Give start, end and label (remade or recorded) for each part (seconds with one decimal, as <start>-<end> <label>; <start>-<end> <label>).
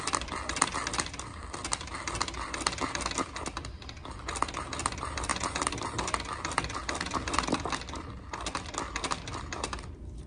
0.0-10.3 recorded